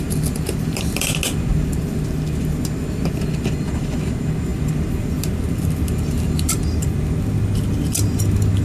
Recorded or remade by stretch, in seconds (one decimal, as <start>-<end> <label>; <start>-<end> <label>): 0.0-8.6 recorded